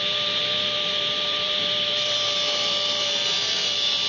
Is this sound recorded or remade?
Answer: remade